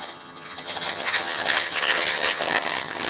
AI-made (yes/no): yes